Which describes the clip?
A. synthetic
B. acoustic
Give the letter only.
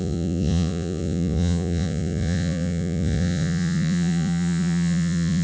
A